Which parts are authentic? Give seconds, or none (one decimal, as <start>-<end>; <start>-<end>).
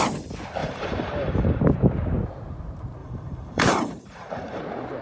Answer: 0.0-0.6; 1.6-3.0; 4.6-5.0